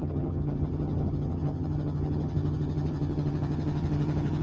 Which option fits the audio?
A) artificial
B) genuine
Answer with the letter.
A